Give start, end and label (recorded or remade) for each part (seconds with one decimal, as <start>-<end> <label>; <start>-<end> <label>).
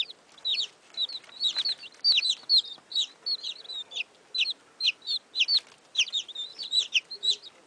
0.0-6.5 recorded; 6.5-7.3 remade; 7.3-7.7 recorded